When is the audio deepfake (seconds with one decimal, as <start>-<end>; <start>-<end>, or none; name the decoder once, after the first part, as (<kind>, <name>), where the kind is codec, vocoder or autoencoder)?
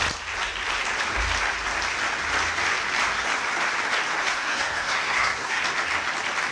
4.2-5.6 (codec, SNAC)